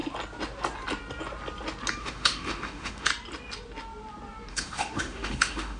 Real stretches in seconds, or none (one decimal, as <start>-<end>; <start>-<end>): 0.0-2.0; 3.1-4.5